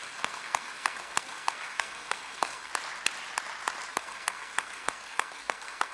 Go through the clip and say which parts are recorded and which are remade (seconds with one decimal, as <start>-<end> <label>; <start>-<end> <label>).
0.0-2.7 remade; 2.7-3.9 recorded; 3.9-5.9 remade